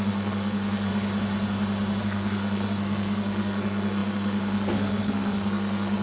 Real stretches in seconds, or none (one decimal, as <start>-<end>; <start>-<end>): 0.9-2.0